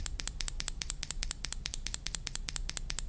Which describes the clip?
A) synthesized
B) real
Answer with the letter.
B